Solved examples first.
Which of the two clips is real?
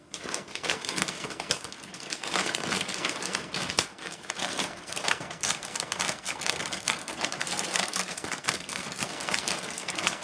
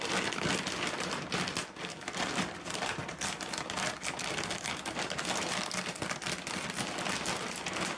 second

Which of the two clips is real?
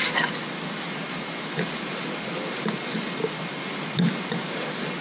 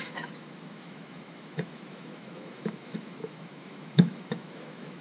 first